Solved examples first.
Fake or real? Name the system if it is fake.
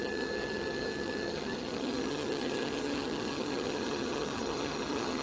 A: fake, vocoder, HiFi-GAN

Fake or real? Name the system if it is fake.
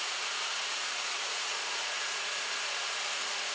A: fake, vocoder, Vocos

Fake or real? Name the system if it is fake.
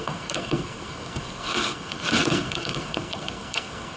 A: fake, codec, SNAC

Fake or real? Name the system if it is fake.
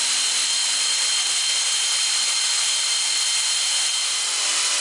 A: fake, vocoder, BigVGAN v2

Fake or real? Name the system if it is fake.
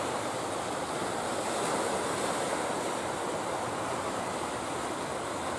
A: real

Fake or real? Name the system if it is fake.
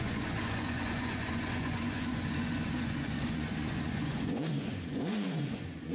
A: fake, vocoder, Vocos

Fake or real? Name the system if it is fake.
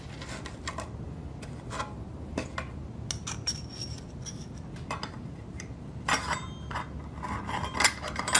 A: real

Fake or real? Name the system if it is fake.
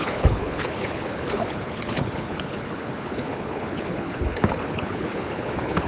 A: fake, codec, HILCodec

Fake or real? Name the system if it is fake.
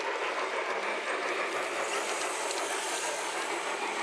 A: fake, vocoder, BigVGAN v2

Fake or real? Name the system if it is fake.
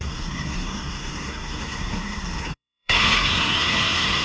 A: fake, codec, SNAC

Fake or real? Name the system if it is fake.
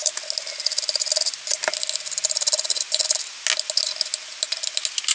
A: real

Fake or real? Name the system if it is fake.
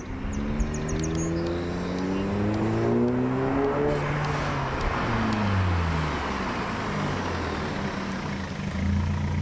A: real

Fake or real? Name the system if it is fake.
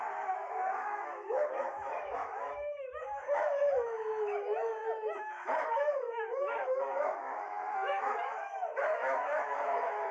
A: fake, autoencoder, DAC-VAE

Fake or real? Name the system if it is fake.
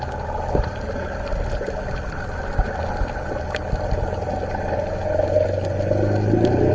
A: real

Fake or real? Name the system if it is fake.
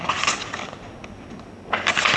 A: real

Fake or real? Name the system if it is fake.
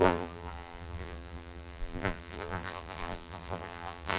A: fake, vocoder, BigVGAN v2